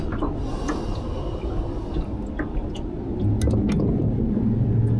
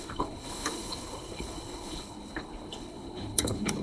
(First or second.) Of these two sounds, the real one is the first